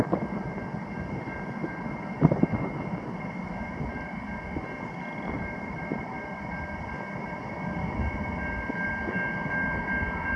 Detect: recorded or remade recorded